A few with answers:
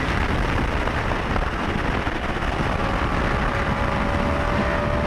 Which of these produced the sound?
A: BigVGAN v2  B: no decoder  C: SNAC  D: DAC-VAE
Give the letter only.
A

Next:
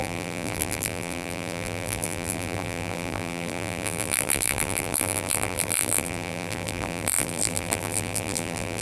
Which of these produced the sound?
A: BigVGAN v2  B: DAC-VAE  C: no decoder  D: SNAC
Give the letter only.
A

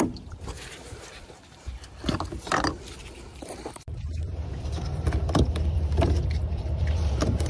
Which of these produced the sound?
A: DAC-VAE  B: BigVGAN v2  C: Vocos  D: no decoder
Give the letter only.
B